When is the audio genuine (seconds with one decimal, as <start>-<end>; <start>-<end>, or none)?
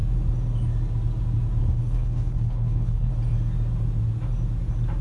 0.0-1.6; 3.1-5.0